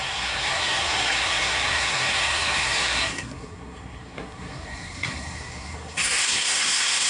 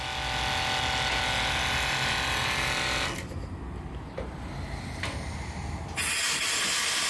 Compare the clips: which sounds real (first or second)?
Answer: second